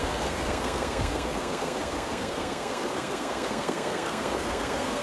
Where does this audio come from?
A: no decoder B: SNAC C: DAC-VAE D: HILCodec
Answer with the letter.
B